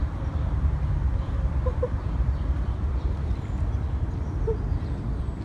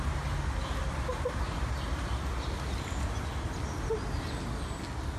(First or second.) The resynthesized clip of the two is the first